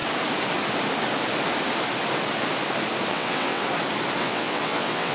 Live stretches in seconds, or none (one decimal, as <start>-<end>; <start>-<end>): 0.0-3.1; 3.6-4.2